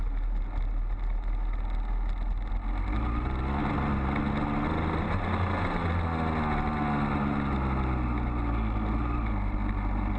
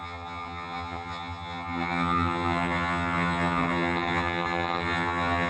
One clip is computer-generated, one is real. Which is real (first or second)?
first